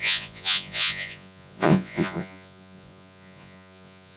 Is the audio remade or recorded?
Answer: remade